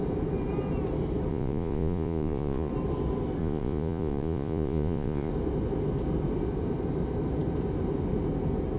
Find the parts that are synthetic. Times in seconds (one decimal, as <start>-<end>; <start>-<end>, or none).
1.3-2.7; 3.4-5.3